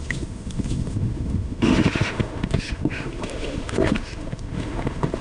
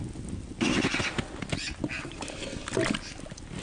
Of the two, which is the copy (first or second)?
first